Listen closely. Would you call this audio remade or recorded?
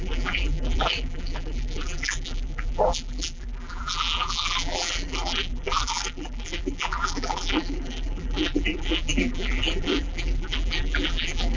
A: remade